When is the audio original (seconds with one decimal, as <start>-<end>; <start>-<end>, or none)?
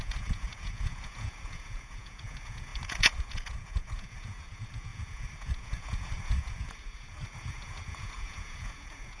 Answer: none